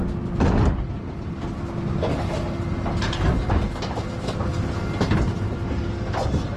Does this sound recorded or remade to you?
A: recorded